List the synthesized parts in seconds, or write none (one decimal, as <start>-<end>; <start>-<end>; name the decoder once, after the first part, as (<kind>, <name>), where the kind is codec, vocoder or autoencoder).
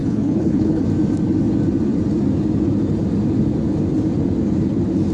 0.0-0.8 (codec, HILCodec)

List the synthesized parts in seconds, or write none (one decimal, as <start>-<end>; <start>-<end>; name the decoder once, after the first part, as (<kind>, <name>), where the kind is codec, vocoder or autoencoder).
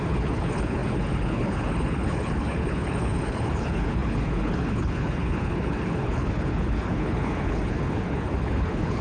0.0-9.0 (codec, HILCodec)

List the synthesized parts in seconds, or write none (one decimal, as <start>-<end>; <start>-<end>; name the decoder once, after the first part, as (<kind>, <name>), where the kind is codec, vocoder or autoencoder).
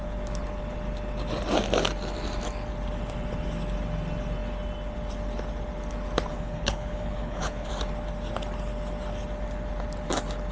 6.3-7.7 (codec, HILCodec)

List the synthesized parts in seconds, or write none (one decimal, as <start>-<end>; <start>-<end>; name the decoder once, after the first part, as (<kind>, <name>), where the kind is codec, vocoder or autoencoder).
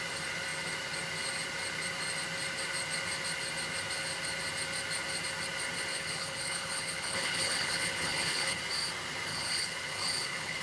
5.9-8.6 (codec, HILCodec); 9.3-10.6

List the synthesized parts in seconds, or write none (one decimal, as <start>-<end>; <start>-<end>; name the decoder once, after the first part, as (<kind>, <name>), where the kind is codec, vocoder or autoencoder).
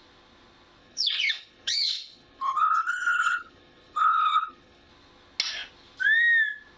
0.8-4.9 (codec, HILCodec)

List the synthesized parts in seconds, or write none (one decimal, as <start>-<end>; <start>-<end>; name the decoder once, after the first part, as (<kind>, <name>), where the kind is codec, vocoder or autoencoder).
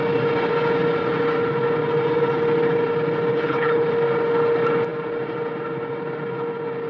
3.3-3.9 (codec, HILCodec)